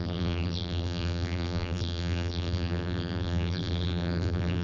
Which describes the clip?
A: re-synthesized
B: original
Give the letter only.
A